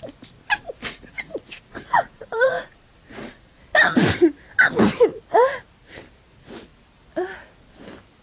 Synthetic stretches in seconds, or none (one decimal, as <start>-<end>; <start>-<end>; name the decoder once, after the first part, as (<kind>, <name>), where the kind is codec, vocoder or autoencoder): 0.8-3.6 (vocoder, Vocos)